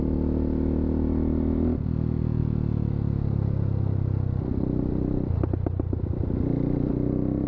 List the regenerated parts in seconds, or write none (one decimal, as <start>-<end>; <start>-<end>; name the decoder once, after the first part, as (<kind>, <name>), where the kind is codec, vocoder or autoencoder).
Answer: none